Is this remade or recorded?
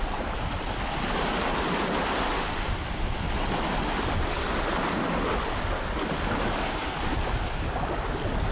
recorded